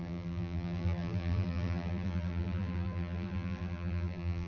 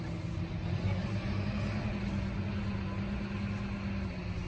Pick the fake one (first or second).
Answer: first